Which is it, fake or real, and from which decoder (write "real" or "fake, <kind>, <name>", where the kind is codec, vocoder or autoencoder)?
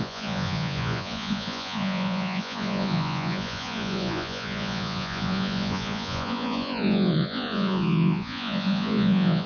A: fake, vocoder, Vocos